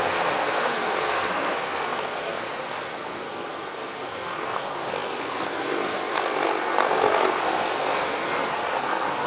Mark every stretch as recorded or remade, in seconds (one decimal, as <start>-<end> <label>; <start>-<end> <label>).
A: 0.0-9.3 remade